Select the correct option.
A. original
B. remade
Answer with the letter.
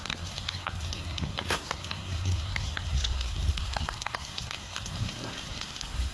B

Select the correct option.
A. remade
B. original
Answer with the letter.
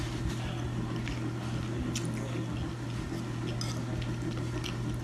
B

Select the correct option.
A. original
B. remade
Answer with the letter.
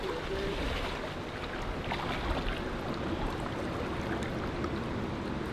A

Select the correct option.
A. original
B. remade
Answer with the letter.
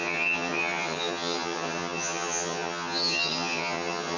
B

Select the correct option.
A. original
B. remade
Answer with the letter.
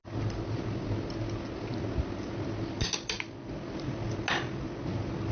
A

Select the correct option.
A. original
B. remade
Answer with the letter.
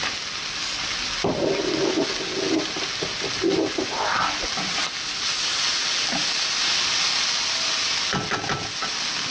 A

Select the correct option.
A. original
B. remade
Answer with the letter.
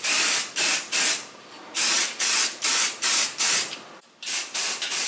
B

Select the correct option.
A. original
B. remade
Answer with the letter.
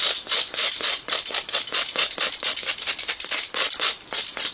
A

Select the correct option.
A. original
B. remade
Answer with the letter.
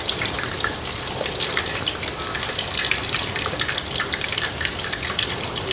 B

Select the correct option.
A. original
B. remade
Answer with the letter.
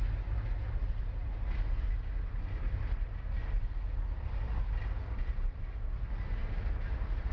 A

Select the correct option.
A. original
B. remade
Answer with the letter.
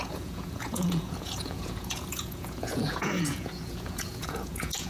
B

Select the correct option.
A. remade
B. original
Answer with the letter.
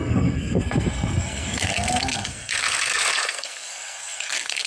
A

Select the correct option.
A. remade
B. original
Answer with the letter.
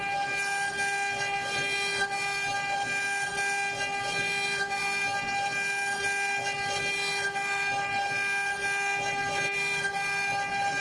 B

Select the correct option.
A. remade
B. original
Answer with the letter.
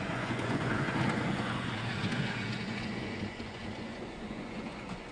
A